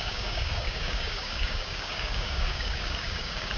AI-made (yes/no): yes